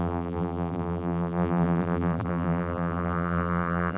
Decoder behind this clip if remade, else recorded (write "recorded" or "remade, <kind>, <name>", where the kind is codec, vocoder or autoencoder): remade, vocoder, BigVGAN v2